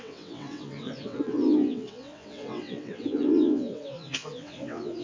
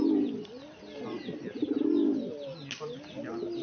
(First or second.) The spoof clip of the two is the first